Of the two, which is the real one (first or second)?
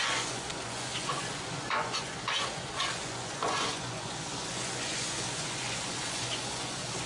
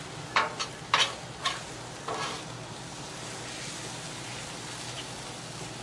second